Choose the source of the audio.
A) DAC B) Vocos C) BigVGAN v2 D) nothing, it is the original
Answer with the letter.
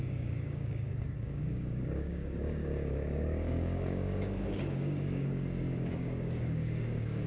A